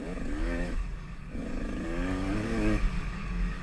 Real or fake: fake